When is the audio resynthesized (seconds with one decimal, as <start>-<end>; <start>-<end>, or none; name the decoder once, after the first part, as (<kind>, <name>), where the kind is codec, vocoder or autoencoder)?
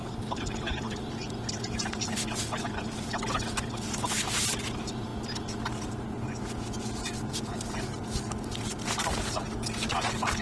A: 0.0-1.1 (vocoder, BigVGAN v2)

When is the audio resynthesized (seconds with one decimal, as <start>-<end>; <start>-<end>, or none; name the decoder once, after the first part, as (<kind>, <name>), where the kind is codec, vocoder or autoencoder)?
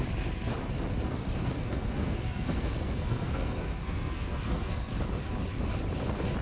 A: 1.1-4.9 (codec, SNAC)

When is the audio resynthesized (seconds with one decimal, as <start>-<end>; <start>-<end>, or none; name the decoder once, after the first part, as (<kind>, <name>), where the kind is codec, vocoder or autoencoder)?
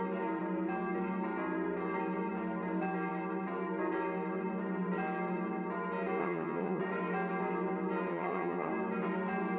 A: 6.2-6.8 (vocoder, HiFi-GAN); 8.1-8.7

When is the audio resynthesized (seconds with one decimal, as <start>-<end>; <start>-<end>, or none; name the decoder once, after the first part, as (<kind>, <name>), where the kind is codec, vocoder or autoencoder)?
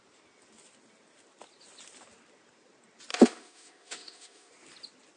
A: 3.1-4.5 (autoencoder, DAC-VAE)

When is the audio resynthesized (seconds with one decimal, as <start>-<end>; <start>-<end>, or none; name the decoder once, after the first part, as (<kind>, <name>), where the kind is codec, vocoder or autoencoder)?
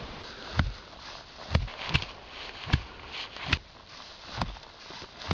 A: none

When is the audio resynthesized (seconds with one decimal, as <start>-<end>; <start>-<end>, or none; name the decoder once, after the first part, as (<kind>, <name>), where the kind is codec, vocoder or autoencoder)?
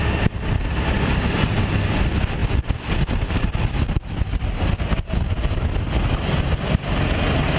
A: none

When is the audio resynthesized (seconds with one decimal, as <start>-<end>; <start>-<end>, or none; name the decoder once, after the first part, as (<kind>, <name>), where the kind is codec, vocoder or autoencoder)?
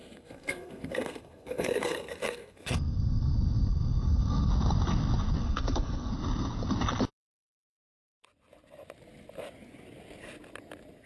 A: 0.0-4.5 (codec, SNAC); 5.4-6.1